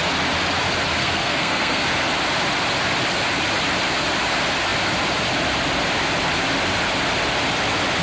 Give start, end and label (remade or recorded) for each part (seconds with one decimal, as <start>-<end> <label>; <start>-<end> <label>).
0.0-1.0 recorded; 1.0-1.8 remade; 1.8-8.0 recorded